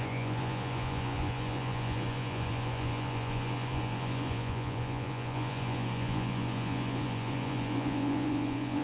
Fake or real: fake